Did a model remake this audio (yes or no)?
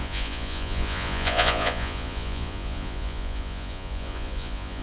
yes